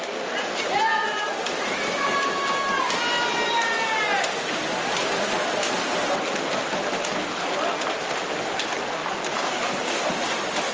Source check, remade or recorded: recorded